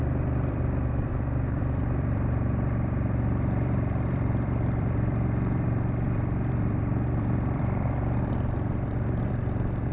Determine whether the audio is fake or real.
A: fake